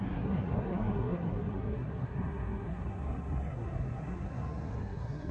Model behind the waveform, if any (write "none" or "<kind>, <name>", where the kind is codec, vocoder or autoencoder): codec, SNAC